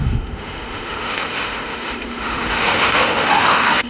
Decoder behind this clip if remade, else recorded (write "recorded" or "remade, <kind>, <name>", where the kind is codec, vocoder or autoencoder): remade, autoencoder, DAC-VAE